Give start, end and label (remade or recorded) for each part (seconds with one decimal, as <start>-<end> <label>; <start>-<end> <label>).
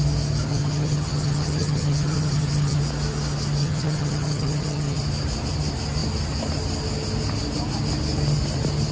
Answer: 0.0-0.5 recorded; 0.5-2.8 remade; 2.8-3.6 recorded; 3.6-5.0 remade; 5.0-8.9 recorded